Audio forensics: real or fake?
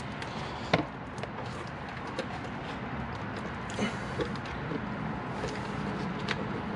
real